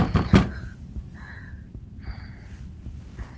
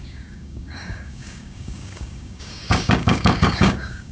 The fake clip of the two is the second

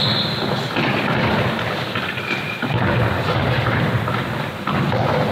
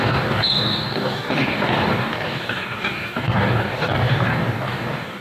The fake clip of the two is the second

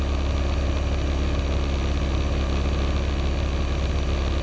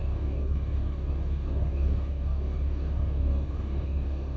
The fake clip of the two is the second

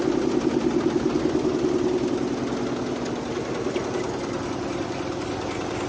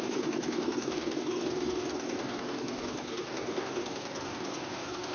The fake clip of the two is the second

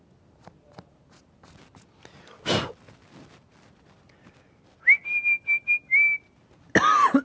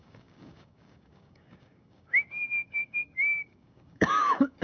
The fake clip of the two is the second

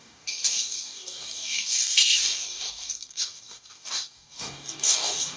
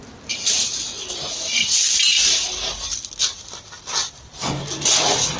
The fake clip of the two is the first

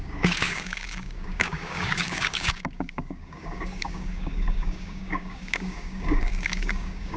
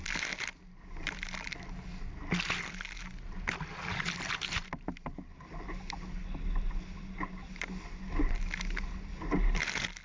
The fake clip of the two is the first